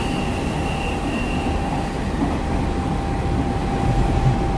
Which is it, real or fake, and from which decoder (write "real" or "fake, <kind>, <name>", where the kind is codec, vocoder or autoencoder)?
real